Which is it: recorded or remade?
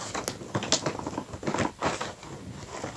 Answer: recorded